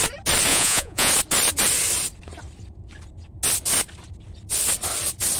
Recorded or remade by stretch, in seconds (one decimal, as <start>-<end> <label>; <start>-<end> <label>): 0.0-0.5 recorded; 0.5-1.1 remade; 1.1-5.4 recorded